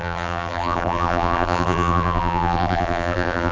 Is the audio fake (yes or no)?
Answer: yes